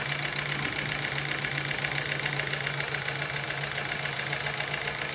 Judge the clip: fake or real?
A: real